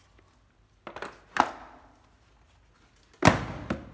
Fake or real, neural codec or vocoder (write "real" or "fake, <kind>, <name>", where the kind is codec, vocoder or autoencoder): real